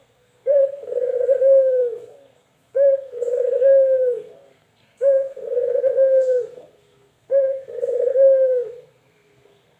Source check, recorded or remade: remade